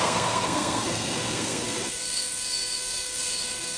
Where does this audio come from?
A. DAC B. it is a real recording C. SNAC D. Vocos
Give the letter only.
C